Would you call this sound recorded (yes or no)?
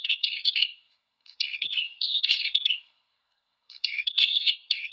no